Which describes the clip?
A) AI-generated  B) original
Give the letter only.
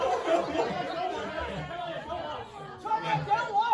B